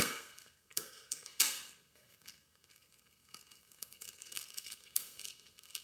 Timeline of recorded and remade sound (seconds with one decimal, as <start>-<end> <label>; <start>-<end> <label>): 0.0-5.8 remade